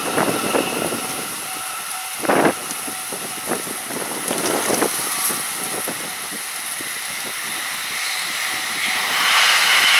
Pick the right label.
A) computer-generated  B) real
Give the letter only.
B